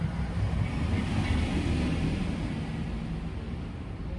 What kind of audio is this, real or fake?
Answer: real